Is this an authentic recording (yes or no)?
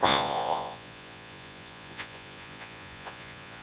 no